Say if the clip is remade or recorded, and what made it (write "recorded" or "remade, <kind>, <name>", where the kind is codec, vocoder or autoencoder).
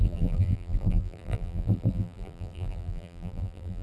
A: remade, vocoder, BigVGAN v2